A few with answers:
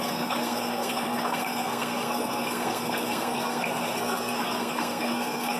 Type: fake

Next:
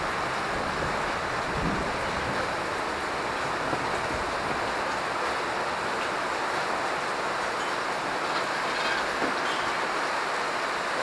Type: real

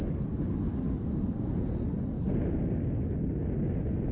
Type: real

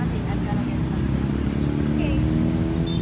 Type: real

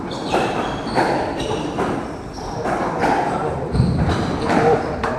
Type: fake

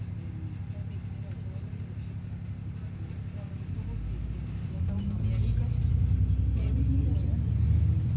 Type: real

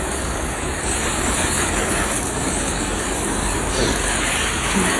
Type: fake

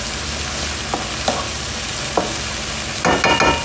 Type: real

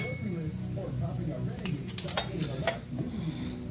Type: real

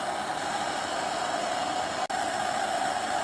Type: real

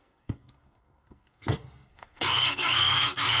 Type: fake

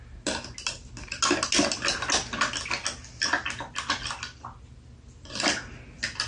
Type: real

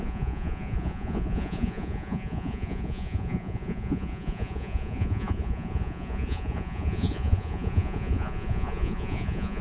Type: fake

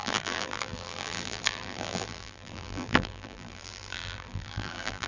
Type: fake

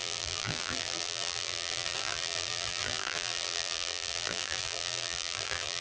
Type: fake